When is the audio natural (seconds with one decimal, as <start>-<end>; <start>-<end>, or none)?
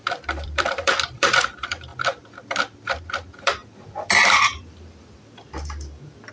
1.9-3.0; 3.6-4.2